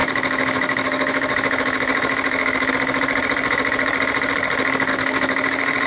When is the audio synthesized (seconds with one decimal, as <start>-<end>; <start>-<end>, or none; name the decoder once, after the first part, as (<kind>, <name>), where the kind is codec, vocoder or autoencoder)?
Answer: 0.0-2.7 (autoencoder, DAC-VAE); 4.9-5.9